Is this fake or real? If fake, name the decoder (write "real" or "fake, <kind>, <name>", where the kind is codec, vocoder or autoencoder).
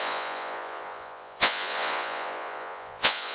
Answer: fake, vocoder, Vocos